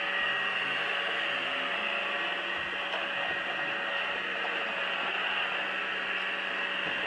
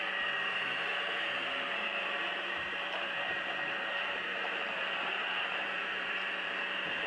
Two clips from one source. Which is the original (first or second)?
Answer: first